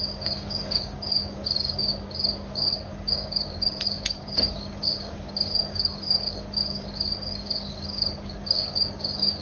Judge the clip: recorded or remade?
remade